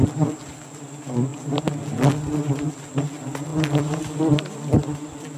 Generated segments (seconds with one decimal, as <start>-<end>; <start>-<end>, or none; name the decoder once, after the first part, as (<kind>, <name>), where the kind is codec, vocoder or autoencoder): none